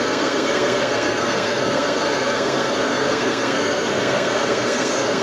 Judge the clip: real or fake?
fake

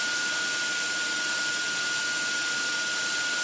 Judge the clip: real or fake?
real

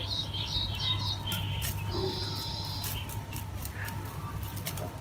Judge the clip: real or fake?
real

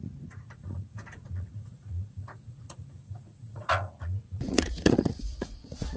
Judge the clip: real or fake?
fake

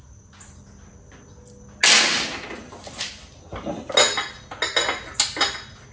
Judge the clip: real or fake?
real